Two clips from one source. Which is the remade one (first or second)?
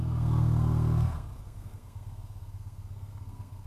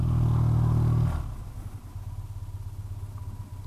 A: first